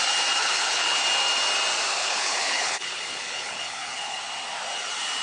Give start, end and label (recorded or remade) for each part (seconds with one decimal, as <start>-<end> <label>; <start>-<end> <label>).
0.0-0.4 recorded; 0.4-1.0 remade; 1.0-2.0 recorded; 2.0-4.2 remade; 4.2-5.2 recorded